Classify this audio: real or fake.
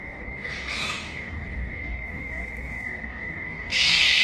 fake